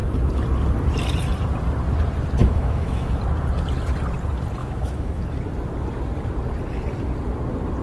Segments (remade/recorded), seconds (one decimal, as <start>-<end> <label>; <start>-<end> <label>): 0.0-2.4 recorded; 2.4-3.2 remade; 3.2-4.6 recorded; 4.6-5.2 remade; 5.2-7.8 recorded